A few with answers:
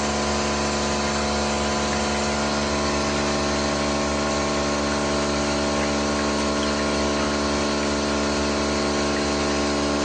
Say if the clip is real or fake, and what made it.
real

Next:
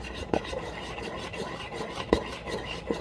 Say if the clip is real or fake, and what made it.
real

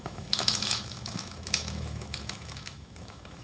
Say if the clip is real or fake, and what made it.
fake, autoencoder, DAC-VAE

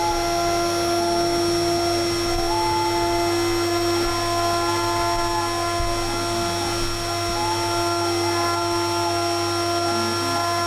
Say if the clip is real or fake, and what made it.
real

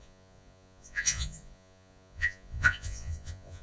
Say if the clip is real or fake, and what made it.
fake, vocoder, Vocos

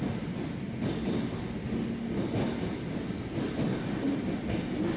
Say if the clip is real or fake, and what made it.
real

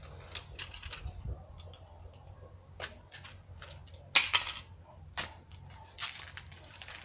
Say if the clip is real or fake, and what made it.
real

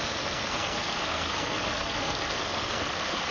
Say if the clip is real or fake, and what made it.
fake, codec, SNAC